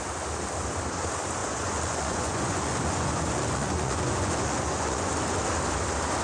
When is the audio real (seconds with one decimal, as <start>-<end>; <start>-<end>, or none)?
0.0-1.4; 5.1-6.2